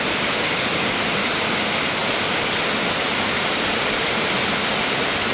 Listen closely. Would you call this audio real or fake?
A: real